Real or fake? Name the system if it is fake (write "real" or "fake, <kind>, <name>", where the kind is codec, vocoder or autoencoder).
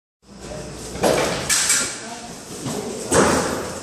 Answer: real